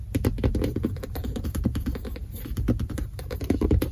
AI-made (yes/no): yes